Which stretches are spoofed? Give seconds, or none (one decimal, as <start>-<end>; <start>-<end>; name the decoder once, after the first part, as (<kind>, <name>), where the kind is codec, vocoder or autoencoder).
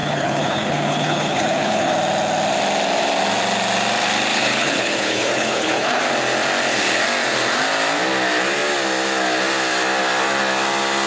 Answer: 0.0-1.9 (codec, HILCodec); 4.3-6.0